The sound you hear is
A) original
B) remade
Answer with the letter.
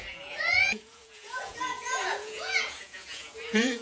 B